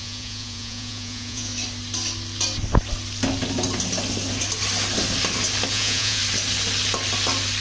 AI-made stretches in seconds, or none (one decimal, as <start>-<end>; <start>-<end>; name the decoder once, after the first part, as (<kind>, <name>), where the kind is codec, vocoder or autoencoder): 0.0-1.5 (vocoder, Vocos); 5.7-6.2